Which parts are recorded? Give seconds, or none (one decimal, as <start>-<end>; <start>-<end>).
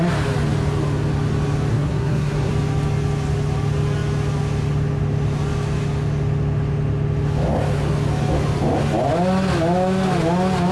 0.0-1.7; 2.5-10.7